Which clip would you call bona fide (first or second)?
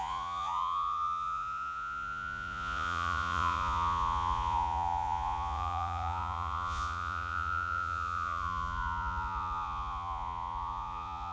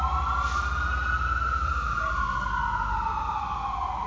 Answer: second